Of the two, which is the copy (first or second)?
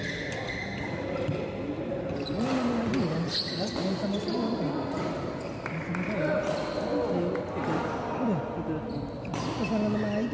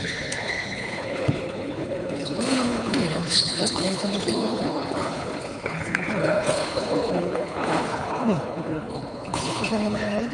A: second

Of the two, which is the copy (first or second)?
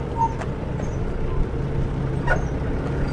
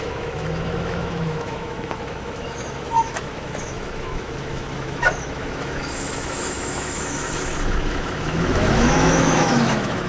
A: second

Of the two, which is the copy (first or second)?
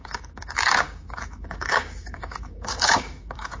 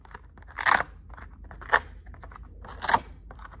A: first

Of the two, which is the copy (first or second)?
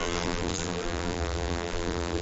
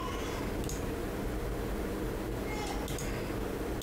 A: first